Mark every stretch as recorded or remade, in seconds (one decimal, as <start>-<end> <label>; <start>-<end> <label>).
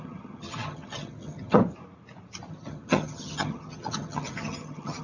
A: 0.0-1.6 remade; 1.6-2.5 recorded; 2.5-5.0 remade